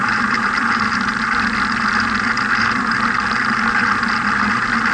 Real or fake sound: real